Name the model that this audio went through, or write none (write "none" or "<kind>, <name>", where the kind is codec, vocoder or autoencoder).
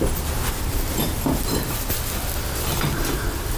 none